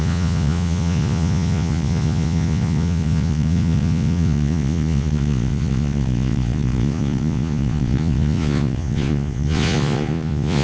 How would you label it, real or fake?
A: fake